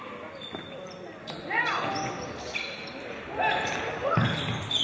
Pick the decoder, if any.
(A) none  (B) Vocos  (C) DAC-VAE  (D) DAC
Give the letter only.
A